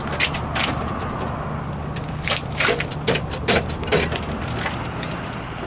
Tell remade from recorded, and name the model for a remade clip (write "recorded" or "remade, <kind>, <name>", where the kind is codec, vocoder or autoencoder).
remade, vocoder, BigVGAN v2